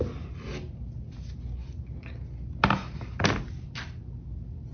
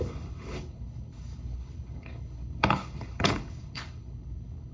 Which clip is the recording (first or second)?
first